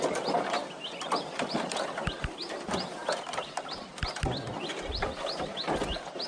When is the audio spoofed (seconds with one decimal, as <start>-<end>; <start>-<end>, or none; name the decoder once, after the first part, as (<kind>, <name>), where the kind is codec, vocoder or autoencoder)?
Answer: 0.0-0.6 (vocoder, BigVGAN v2); 1.5-3.0; 4.5-6.3